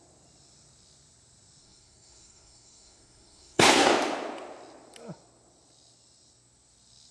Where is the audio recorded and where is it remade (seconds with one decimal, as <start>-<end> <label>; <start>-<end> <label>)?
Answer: 0.0-1.6 recorded; 1.6-3.9 remade; 3.9-7.1 recorded

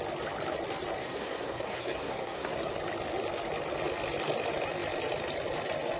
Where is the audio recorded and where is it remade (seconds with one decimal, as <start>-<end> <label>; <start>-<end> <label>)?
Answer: 0.0-1.0 recorded; 1.0-2.7 remade; 2.7-6.0 recorded

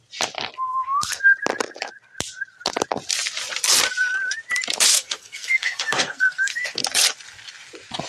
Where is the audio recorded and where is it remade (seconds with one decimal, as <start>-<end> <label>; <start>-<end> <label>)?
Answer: 0.0-0.7 recorded; 0.7-1.2 remade; 1.2-4.9 recorded; 4.9-6.8 remade; 6.8-8.1 recorded

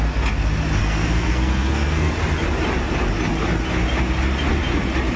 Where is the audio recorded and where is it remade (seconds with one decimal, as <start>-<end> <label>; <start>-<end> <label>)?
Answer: 0.0-0.8 recorded; 0.8-2.1 remade; 2.1-5.2 recorded

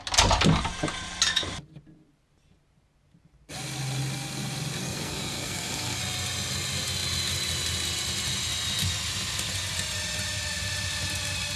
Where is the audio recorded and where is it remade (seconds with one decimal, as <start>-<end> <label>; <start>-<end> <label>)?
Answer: 0.0-4.8 recorded; 4.8-6.0 remade; 6.0-11.6 recorded